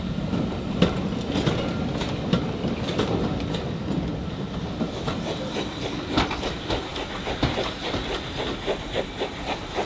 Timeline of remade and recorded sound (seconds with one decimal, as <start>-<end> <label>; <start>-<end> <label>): 0.0-9.9 recorded